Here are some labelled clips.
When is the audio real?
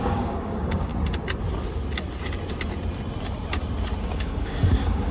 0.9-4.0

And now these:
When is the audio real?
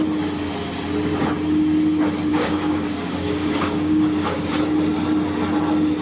0.0-2.3; 4.5-6.0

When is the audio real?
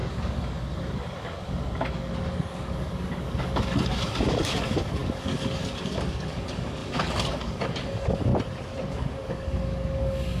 8.3-8.9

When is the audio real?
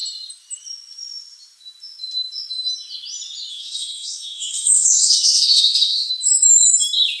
0.0-3.5; 6.1-7.2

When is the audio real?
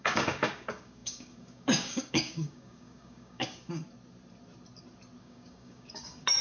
3.8-5.2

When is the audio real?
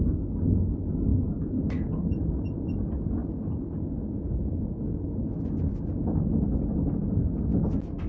0.0-8.1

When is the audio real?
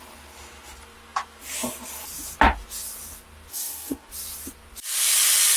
0.0-3.5; 4.1-5.6